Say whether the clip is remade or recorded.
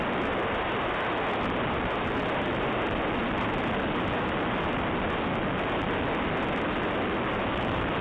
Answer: recorded